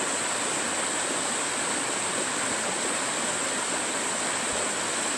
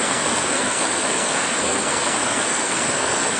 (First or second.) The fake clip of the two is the second